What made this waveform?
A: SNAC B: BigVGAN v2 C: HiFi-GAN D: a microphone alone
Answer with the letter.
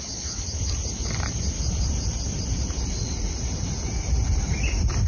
D